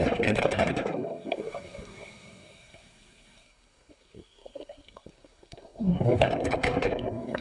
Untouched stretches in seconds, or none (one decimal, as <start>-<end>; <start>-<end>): none